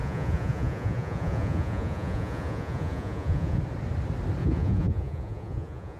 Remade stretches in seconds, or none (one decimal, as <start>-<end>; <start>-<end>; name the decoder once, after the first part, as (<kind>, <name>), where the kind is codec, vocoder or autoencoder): 0.0-3.6 (vocoder, Vocos); 4.4-6.0